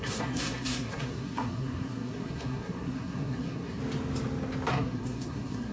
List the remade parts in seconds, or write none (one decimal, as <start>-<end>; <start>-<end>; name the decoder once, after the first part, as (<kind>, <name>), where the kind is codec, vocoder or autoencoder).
0.0-3.8 (codec, SNAC); 4.7-5.7